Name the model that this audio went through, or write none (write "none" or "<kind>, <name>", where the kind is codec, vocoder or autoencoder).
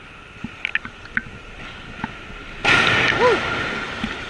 none